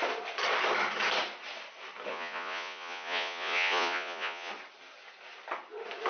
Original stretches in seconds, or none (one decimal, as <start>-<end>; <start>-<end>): 0.0-2.1; 4.5-6.1